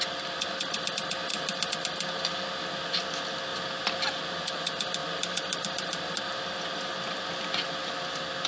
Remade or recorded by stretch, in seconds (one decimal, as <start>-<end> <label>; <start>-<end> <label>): 0.0-8.5 recorded